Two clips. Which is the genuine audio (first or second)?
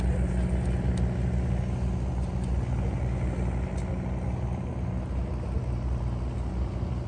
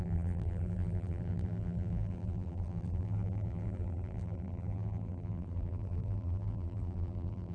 first